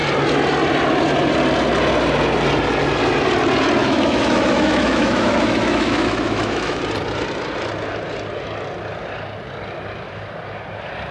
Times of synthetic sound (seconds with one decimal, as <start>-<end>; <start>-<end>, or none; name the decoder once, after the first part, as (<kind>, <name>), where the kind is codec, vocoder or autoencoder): 3.8-6.8 (autoencoder, DAC-VAE)